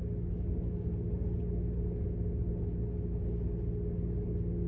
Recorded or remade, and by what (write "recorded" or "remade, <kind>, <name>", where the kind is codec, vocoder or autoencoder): recorded